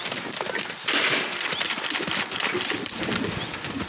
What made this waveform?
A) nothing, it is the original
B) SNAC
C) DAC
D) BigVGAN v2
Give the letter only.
A